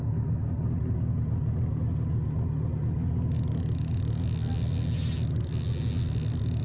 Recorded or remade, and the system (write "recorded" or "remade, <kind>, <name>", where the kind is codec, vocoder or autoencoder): recorded